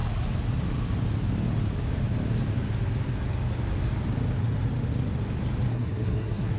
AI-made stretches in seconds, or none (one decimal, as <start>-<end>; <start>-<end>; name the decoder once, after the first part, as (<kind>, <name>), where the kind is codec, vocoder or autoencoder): 5.7-6.6 (codec, SNAC)